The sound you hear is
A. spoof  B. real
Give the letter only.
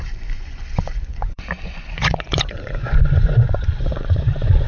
A